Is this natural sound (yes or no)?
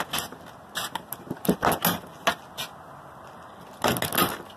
yes